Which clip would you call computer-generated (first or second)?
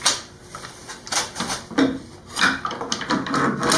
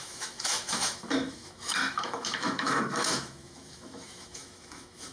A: second